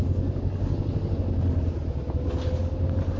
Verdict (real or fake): real